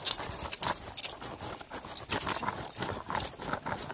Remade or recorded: recorded